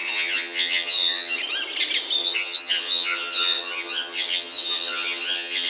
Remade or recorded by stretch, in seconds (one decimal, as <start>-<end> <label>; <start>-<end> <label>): 0.0-1.4 remade; 1.4-2.2 recorded; 2.2-5.7 remade